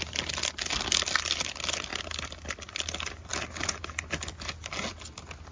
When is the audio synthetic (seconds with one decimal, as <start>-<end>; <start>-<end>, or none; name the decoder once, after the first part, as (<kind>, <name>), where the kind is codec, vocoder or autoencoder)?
none